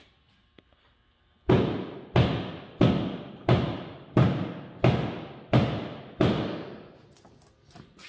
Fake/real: real